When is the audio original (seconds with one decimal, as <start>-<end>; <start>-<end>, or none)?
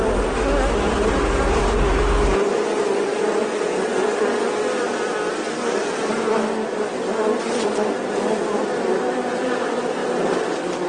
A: 0.0-10.9